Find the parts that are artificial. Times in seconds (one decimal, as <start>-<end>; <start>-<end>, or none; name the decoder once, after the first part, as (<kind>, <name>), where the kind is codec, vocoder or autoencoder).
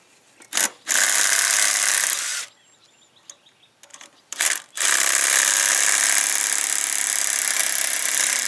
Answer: 3.9-4.9 (vocoder, BigVGAN v2); 7.6-8.5